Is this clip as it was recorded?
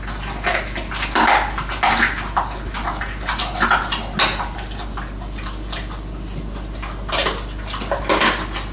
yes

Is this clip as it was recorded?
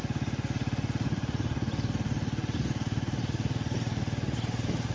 yes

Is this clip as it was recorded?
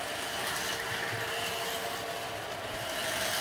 yes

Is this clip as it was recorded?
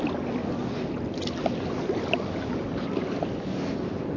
yes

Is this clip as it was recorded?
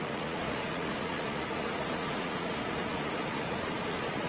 no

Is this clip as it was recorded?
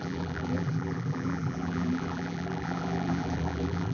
no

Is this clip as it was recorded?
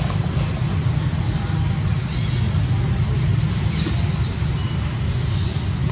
yes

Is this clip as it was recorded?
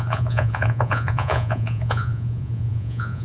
no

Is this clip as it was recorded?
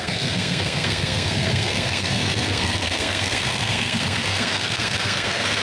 no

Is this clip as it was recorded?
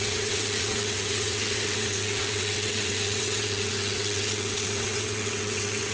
no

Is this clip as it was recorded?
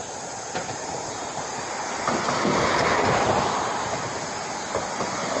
yes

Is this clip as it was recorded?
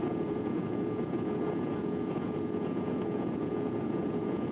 no